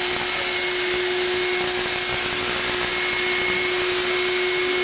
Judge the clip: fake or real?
real